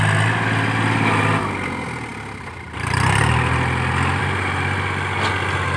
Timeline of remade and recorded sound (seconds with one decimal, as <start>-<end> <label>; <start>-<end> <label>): 0.0-5.8 recorded